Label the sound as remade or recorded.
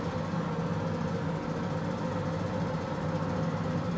recorded